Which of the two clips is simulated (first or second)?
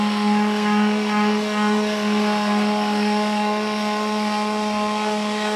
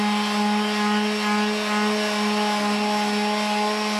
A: first